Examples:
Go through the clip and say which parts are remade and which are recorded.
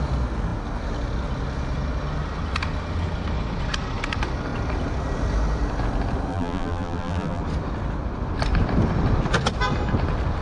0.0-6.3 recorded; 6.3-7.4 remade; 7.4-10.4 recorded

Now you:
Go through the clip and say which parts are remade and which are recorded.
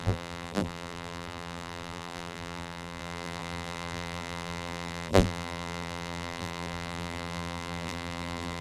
0.0-8.6 remade